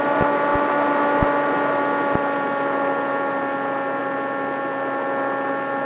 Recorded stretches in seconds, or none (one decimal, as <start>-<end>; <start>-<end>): 0.0-5.9